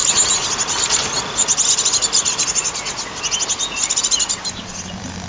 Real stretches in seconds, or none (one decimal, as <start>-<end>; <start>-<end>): 0.0-5.3